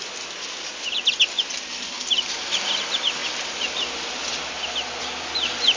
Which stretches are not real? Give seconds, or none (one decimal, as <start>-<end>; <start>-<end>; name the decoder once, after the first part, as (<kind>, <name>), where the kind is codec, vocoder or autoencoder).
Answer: none